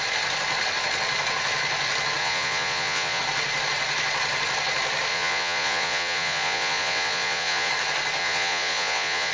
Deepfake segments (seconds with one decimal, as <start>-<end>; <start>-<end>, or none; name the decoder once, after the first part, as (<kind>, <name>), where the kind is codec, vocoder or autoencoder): 2.2-3.2 (vocoder, Vocos); 5.1-7.7; 8.2-9.3